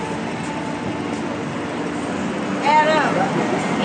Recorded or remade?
recorded